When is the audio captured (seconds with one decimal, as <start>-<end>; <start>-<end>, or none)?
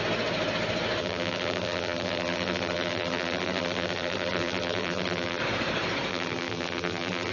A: 0.0-1.0; 5.4-6.1